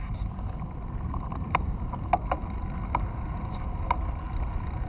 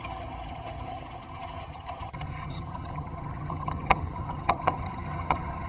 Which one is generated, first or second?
second